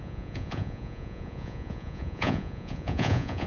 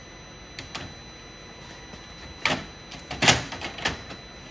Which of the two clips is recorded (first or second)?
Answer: second